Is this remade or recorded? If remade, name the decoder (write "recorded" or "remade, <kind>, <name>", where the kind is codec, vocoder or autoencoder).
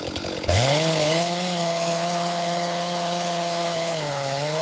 remade, codec, HILCodec